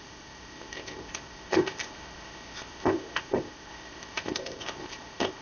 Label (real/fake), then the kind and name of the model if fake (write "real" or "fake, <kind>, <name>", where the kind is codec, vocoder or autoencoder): fake, codec, ZipCodec